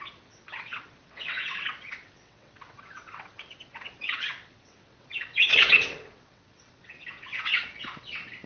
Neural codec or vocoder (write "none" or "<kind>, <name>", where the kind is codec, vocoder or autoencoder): vocoder, WaveNeXt